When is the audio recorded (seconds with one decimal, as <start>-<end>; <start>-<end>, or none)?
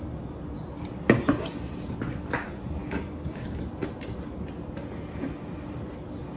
0.0-2.8; 3.6-6.4